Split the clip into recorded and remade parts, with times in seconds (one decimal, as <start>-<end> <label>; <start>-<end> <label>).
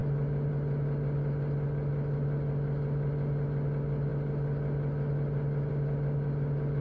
0.0-6.8 recorded